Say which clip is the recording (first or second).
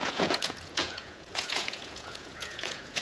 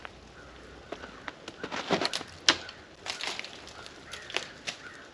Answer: second